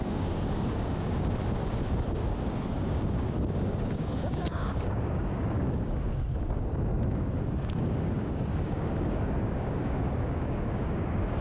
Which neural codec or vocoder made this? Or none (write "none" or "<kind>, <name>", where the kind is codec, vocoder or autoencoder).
codec, DAC